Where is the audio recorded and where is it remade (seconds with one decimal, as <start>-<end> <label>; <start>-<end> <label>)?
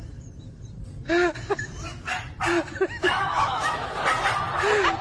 0.0-3.0 recorded; 3.0-3.9 remade; 3.9-5.0 recorded